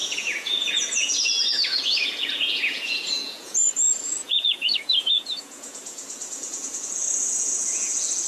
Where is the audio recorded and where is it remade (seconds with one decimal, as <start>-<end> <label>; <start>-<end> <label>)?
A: 0.0-8.3 remade